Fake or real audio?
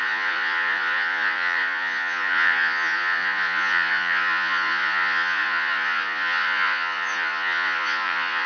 fake